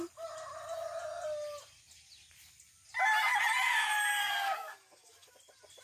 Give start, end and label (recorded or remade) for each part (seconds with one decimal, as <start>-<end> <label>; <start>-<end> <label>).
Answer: 0.0-4.1 recorded; 4.1-5.3 remade; 5.3-5.8 recorded